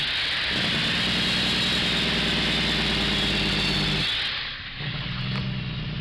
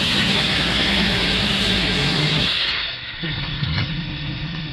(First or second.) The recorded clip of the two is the first